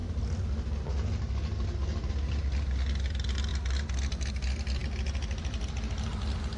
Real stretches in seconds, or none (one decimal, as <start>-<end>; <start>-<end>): 0.0-2.1